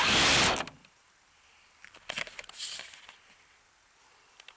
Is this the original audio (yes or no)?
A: yes